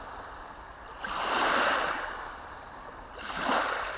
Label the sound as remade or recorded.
recorded